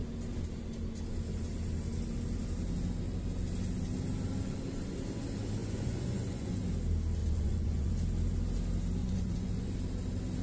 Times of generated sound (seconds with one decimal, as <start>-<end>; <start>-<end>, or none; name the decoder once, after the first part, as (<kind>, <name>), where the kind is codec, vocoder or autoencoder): 5.6-6.6 (vocoder, Vocos); 7.2-7.9; 9.0-9.7